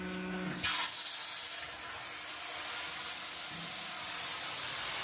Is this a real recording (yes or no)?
yes